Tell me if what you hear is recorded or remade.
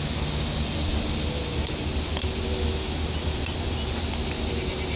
recorded